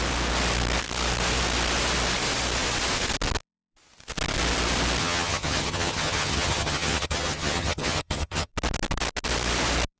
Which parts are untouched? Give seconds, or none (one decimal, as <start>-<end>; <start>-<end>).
0.0-5.0; 8.5-10.0